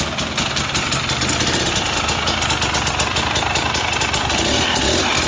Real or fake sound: real